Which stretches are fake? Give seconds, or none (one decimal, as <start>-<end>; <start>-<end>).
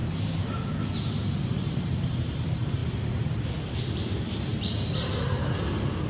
1.7-2.8; 3.9-4.5